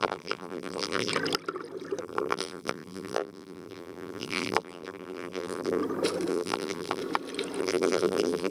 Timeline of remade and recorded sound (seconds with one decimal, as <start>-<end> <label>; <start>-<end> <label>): 0.0-1.1 remade; 1.1-2.0 recorded; 2.0-5.8 remade; 5.8-6.3 recorded; 6.3-7.0 remade; 7.0-7.6 recorded; 7.6-8.5 remade